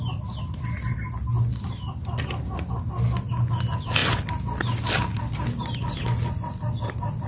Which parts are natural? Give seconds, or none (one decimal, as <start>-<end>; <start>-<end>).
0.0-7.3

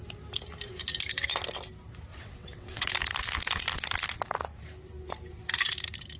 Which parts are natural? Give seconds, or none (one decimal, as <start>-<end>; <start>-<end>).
0.0-2.1; 2.9-6.2

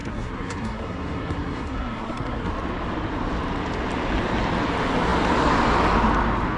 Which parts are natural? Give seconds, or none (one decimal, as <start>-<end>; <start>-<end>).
2.5-6.6

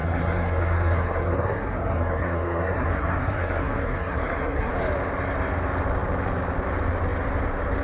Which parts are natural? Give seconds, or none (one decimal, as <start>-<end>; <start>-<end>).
4.7-7.8

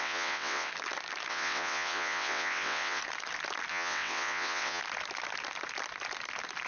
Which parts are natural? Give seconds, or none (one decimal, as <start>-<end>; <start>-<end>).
0.7-1.3; 3.0-3.7; 4.8-6.7

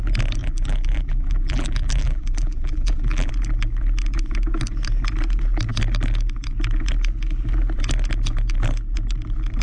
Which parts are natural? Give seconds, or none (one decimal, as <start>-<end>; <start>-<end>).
0.0-0.4; 3.3-9.6